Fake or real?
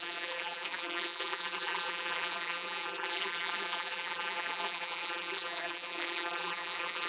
fake